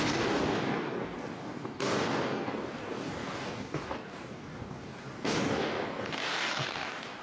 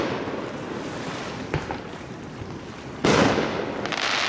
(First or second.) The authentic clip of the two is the second